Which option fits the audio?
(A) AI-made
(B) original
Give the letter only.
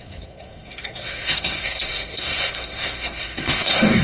A